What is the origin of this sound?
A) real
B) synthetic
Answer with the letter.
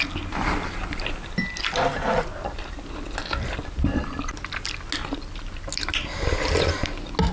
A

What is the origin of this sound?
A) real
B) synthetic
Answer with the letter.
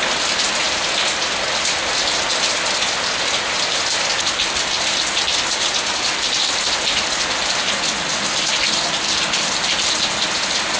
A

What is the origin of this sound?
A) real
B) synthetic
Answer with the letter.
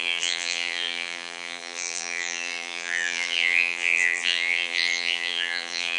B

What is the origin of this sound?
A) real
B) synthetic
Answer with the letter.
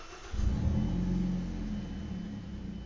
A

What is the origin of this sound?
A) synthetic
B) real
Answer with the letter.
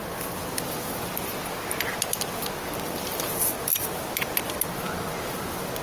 B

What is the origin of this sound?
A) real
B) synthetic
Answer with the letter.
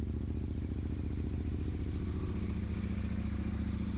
A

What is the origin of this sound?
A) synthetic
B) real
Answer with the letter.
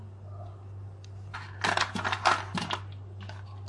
B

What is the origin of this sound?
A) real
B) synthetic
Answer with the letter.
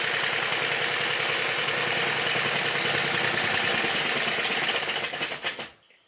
A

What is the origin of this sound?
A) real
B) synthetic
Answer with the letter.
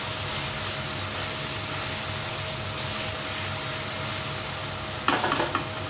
A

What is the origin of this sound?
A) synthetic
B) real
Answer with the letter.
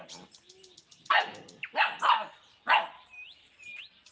A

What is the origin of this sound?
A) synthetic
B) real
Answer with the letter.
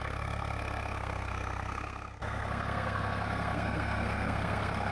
A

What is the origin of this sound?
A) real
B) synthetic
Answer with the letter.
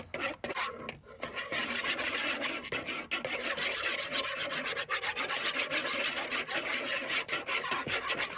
A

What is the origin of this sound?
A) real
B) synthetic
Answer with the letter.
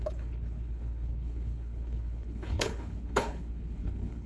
B